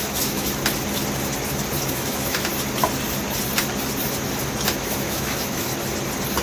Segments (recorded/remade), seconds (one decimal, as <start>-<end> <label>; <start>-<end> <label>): 0.0-0.6 remade; 0.6-1.8 recorded; 1.8-2.5 remade; 2.5-4.7 recorded; 4.7-5.7 remade; 5.7-6.4 recorded